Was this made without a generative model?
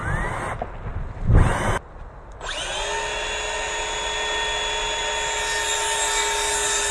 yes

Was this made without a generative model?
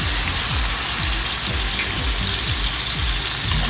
yes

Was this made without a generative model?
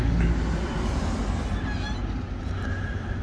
yes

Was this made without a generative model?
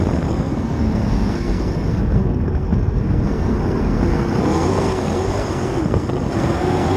no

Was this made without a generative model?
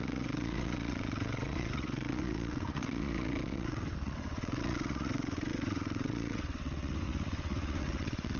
no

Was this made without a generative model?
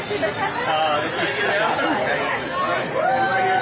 yes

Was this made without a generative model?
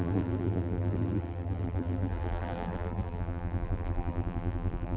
no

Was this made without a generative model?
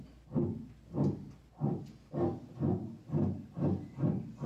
yes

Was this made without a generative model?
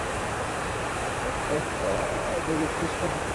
no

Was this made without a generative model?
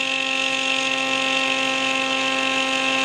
yes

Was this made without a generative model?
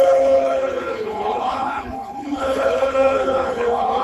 no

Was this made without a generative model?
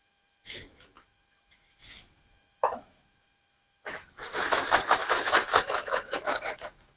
no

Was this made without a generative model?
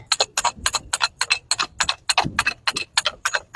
yes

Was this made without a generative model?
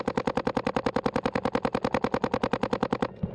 yes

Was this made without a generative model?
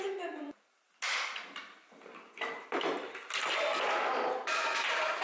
yes